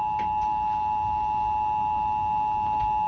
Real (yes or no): yes